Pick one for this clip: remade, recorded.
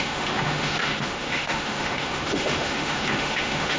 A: remade